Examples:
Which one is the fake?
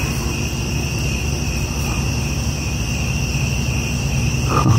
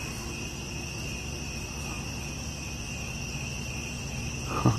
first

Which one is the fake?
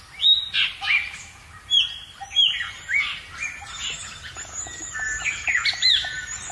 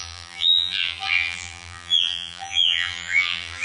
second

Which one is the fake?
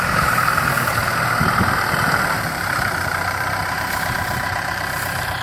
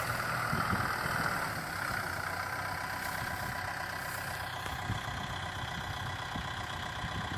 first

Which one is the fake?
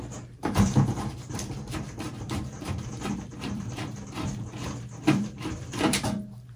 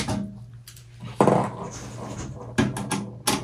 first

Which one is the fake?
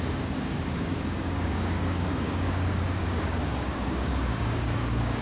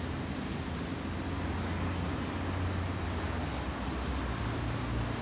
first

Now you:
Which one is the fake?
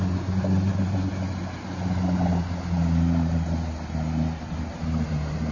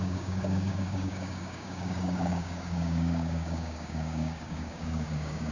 second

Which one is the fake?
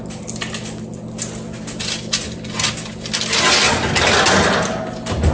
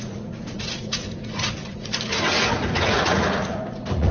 second